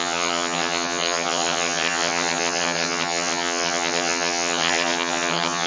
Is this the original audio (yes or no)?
no